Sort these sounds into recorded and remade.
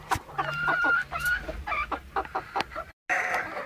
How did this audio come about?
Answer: recorded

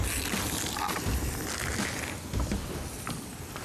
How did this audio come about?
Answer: recorded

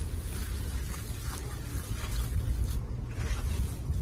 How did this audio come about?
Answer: recorded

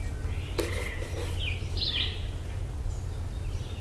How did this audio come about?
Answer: recorded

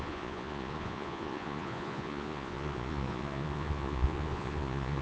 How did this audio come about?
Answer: remade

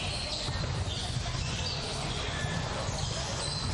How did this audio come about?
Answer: remade